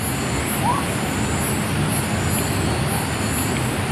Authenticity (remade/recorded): recorded